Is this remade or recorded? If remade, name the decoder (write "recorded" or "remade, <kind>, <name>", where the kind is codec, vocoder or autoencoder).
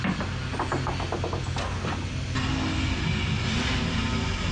recorded